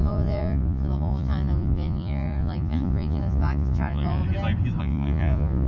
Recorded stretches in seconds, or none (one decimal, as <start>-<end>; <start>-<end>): 4.2-4.8